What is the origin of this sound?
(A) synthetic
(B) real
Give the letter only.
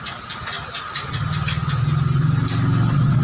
B